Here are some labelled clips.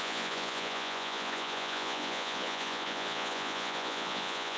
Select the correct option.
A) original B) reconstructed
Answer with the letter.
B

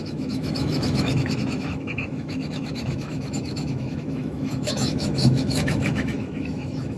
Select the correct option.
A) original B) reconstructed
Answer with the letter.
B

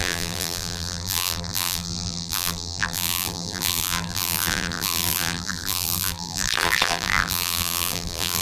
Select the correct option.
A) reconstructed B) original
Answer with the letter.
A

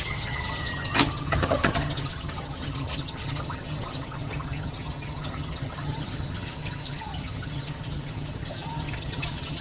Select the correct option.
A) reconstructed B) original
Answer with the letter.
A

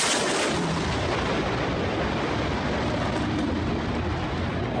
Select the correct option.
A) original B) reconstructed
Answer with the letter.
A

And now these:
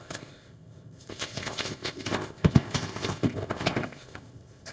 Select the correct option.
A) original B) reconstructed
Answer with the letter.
B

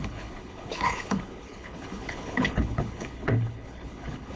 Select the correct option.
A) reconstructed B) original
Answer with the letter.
A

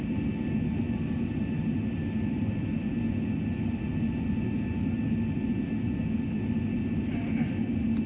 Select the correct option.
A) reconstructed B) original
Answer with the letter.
B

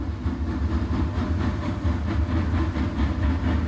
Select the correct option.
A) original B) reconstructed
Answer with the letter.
A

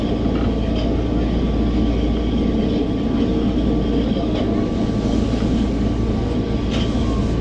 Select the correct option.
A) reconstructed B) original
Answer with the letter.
B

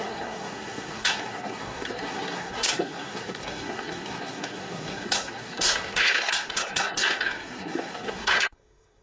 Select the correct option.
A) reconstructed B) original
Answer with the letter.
A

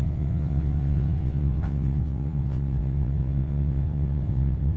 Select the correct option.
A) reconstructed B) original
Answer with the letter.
A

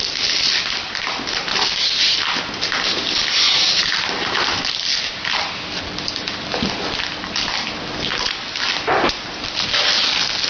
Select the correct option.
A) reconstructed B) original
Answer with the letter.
B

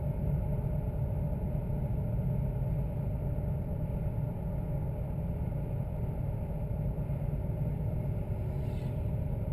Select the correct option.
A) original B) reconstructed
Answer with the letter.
A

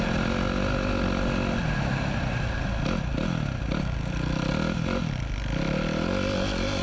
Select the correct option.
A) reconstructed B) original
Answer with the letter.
B